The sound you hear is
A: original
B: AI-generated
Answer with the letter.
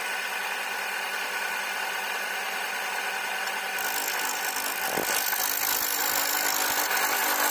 A